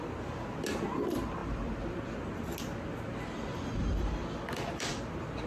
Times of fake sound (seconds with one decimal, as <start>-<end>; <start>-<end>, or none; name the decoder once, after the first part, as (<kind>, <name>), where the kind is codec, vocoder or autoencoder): none